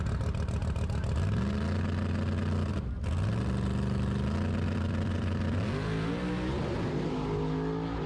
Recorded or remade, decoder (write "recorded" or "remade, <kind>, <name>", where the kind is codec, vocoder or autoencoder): recorded